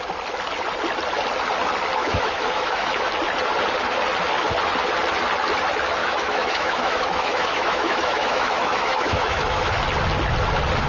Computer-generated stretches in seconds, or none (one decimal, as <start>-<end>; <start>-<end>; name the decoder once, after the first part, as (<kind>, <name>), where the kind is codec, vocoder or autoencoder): 2.0-3.1 (autoencoder, DAC-VAE); 6.0-9.7